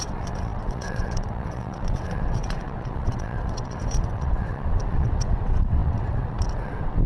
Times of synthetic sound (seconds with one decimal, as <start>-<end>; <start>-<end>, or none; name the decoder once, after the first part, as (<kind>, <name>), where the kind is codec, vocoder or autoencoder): 0.0-7.1 (vocoder, WaveNeXt)